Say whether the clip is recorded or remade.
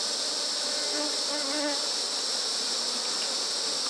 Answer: recorded